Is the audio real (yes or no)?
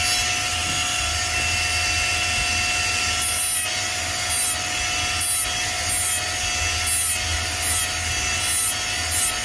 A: yes